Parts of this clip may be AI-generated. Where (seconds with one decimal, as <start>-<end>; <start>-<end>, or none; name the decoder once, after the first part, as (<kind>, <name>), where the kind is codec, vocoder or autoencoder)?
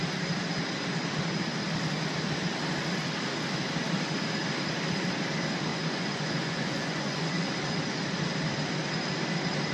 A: 5.7-7.5 (vocoder, Vocos)